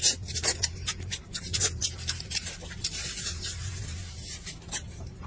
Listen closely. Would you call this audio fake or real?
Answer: fake